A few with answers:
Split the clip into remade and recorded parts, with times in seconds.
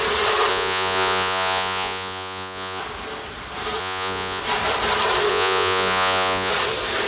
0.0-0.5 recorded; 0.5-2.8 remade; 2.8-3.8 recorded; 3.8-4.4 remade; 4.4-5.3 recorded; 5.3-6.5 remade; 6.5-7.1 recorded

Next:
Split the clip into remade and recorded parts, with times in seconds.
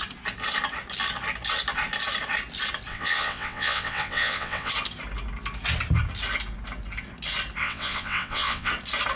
0.0-2.9 recorded; 2.9-4.7 remade; 4.7-7.6 recorded; 7.6-8.7 remade; 8.7-9.2 recorded